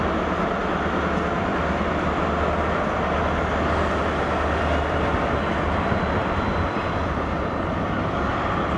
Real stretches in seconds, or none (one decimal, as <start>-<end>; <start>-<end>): 0.0-6.2; 6.8-8.8